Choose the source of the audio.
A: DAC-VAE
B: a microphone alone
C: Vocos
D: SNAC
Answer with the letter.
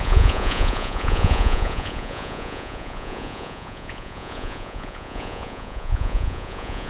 C